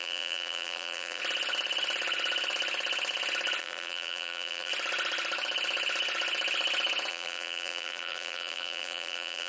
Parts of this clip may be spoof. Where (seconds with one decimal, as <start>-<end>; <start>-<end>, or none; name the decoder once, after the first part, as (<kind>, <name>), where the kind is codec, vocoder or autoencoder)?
0.0-1.2 (vocoder, BigVGAN v2); 3.6-4.7; 7.1-9.5